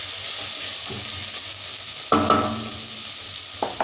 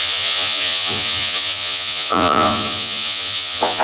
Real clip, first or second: first